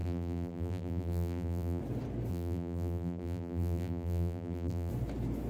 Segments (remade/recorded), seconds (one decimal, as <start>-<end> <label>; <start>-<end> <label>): 0.0-1.8 remade; 1.8-2.3 recorded; 2.3-4.9 remade; 4.9-5.5 recorded